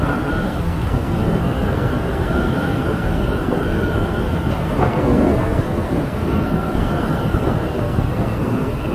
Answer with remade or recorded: remade